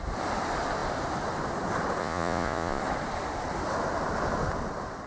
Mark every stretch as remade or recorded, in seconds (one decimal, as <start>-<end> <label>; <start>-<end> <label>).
0.0-2.0 recorded; 2.0-2.8 remade; 2.8-5.1 recorded